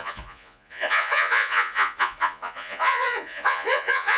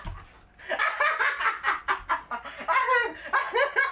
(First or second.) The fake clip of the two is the first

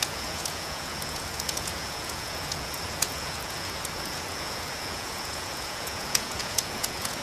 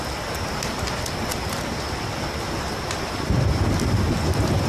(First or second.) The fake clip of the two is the first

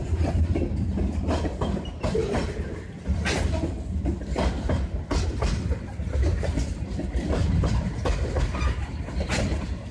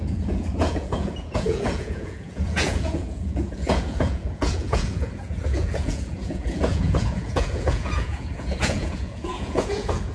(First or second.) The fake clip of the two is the second